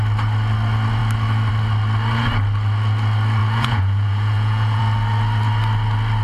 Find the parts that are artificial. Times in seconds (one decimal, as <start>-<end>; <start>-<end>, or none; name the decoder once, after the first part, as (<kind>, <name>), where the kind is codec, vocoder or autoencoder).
3.4-4.8 (vocoder, Vocos)